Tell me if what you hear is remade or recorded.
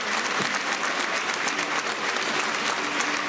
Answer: recorded